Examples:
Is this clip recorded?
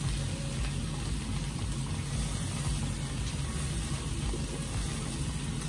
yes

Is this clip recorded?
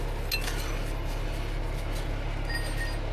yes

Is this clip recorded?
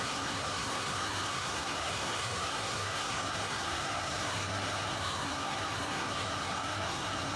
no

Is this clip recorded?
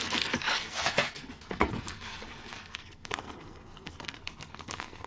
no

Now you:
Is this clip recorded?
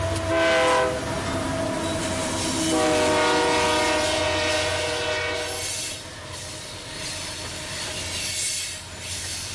yes